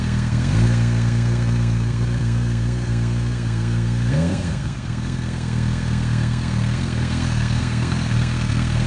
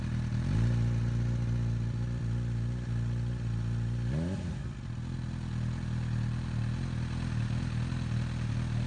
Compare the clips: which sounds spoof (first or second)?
first